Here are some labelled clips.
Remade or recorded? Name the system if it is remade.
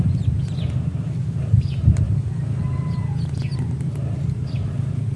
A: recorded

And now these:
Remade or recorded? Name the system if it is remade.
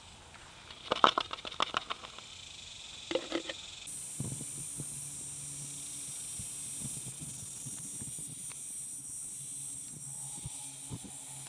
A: recorded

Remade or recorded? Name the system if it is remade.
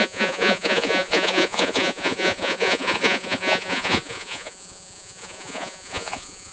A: remade, vocoder, Vocos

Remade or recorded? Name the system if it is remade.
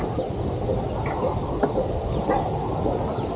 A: recorded